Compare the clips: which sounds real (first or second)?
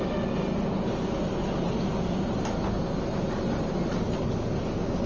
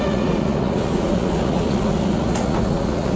first